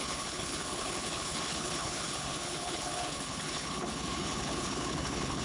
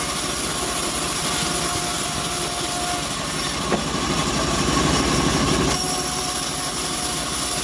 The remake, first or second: first